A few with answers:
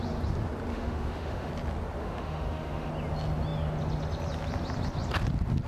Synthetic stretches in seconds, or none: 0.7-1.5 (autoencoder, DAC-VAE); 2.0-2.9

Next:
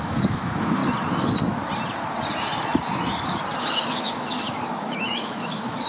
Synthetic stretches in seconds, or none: 0.0-0.8 (autoencoder, DAC-VAE); 3.6-5.9

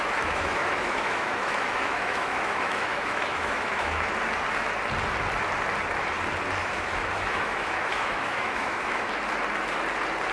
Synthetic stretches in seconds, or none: 0.0-4.1 (autoencoder, DAC-VAE); 6.6-9.1

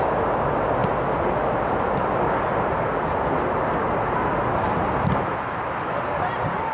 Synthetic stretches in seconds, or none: none

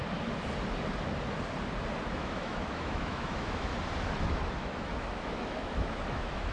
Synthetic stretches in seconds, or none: 2.1-3.7 (autoencoder, DAC-VAE); 4.2-6.5

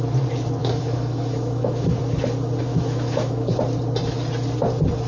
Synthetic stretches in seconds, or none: 0.6-2.0 (autoencoder, DAC-VAE); 2.7-3.5